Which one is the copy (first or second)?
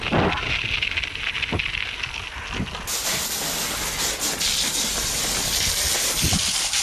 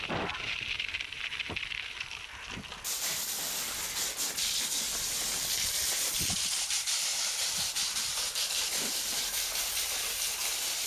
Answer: second